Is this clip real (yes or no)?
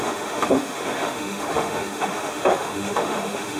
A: no